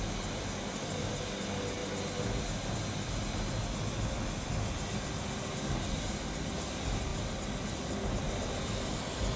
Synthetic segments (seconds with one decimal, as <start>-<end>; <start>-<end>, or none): none